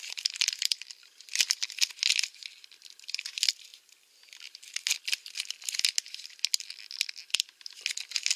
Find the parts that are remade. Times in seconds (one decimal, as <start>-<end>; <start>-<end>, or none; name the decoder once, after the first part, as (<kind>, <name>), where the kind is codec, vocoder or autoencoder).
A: none